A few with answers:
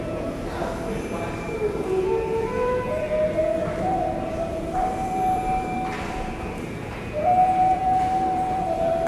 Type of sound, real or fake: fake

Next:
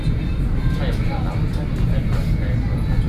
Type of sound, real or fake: real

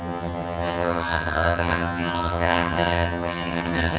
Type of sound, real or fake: fake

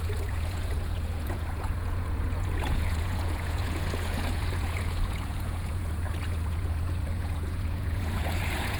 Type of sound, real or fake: fake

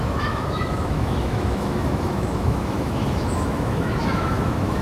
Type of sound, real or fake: fake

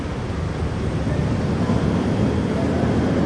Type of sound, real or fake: real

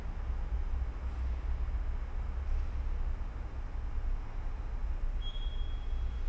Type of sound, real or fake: real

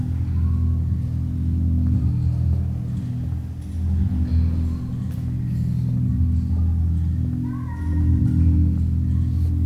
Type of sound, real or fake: real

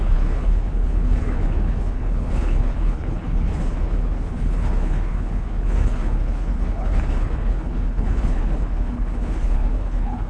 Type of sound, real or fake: fake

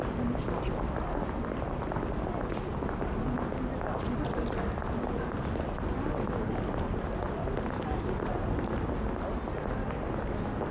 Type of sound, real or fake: real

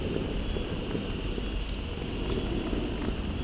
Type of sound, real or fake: real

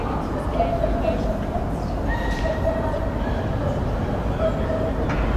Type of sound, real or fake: real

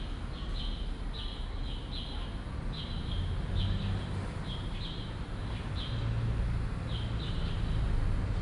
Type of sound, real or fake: real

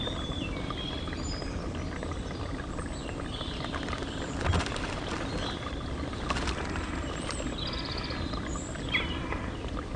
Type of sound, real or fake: real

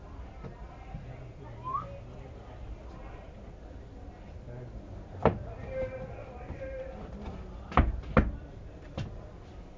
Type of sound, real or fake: real